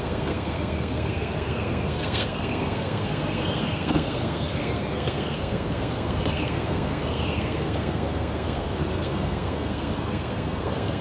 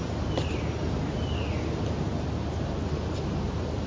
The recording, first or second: second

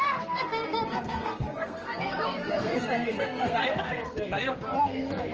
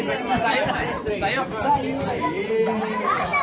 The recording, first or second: second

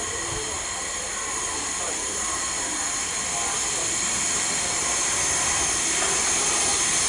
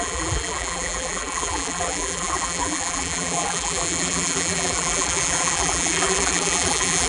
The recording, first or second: first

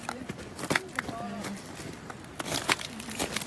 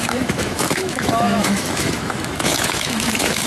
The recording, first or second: first